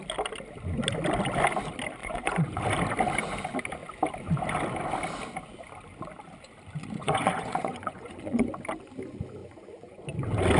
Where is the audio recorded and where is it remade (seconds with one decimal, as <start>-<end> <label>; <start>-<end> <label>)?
0.0-2.0 recorded; 2.0-2.6 remade; 2.6-7.0 recorded; 7.0-8.5 remade; 8.5-9.4 recorded; 9.4-10.0 remade; 10.0-10.6 recorded